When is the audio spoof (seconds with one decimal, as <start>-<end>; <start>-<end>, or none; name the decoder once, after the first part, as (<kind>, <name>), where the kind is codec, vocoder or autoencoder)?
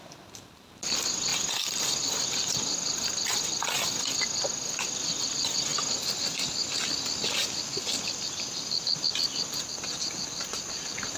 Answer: 0.0-5.7 (vocoder, BigVGAN v2); 8.0-11.2